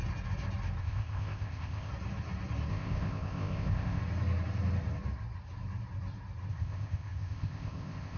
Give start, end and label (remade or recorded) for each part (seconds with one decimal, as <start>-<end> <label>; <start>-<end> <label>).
0.0-0.8 recorded; 0.8-1.9 remade; 1.9-2.7 recorded; 2.7-4.0 remade; 4.0-6.5 recorded; 6.5-8.2 remade